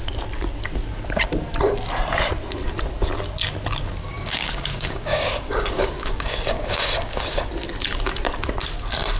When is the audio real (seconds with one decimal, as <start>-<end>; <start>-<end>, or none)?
0.0-4.0; 7.5-9.2